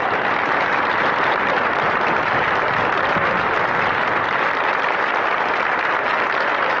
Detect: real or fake real